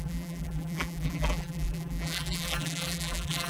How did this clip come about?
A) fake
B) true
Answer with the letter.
A